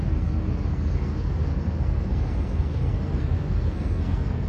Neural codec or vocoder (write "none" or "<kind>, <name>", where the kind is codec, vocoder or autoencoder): codec, SNAC